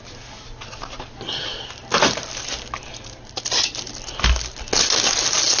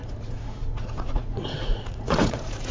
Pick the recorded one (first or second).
first